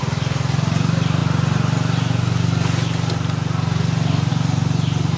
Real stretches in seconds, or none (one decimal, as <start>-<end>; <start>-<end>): 0.0-5.2